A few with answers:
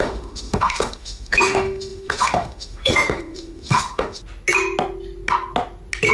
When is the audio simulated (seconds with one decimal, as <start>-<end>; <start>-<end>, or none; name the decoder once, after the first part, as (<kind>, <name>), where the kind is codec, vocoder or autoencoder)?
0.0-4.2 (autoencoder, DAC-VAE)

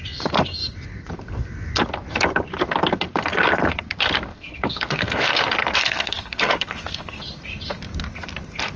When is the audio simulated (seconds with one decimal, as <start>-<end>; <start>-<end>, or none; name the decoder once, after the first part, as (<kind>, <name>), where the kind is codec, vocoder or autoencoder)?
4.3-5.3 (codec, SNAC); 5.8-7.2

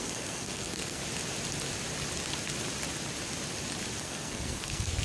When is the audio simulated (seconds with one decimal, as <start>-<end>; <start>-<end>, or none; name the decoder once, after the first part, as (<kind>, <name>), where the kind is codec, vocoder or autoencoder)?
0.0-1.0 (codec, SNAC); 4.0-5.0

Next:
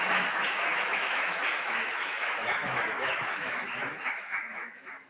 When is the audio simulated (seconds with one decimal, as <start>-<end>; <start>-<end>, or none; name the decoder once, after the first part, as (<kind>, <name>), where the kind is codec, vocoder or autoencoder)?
0.0-5.1 (autoencoder, DAC-VAE)

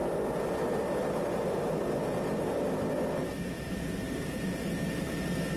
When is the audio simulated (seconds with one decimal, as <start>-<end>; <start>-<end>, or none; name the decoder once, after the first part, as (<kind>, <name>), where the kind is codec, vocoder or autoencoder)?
3.2-5.1 (vocoder, BigVGAN v2)

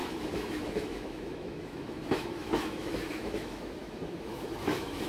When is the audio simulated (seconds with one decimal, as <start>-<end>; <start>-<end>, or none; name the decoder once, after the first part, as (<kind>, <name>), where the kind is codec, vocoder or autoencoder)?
0.0-5.1 (autoencoder, DAC-VAE)

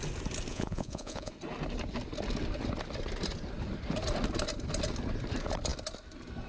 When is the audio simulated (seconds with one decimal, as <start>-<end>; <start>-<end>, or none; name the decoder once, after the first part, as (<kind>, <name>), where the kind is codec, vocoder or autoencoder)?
0.5-1.3 (vocoder, Vocos)